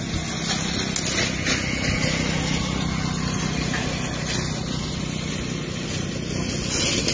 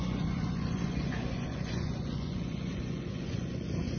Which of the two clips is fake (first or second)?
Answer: second